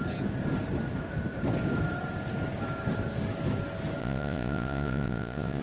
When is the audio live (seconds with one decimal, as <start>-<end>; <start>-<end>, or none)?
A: 0.0-4.0